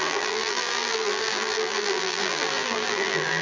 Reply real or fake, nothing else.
fake